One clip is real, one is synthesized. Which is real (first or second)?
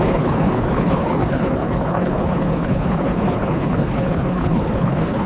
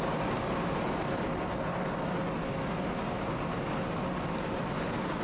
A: second